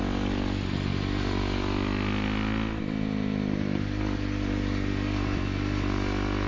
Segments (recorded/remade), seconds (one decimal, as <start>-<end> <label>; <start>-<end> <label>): 0.0-6.5 recorded